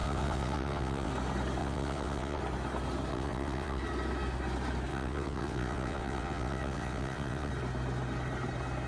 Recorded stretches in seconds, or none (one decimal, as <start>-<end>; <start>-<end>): 1.1-1.6; 2.4-3.1; 3.8-4.9; 7.5-8.9